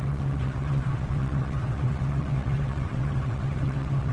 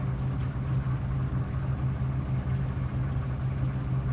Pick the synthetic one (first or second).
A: first